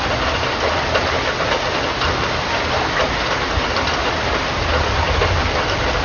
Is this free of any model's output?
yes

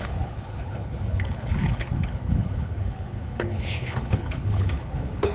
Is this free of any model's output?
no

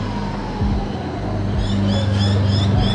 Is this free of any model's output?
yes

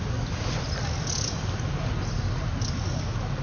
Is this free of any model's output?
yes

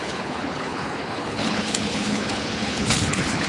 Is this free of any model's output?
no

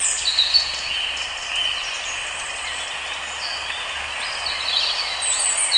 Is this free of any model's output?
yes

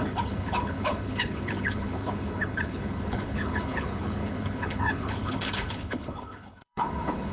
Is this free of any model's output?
no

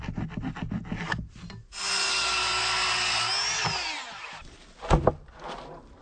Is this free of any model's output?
yes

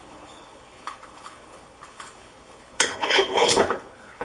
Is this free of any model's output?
no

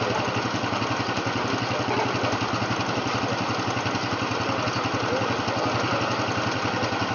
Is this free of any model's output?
yes